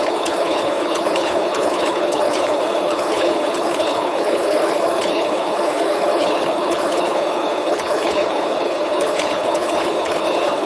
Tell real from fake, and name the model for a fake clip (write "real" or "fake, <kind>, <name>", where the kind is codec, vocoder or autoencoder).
fake, codec, HILCodec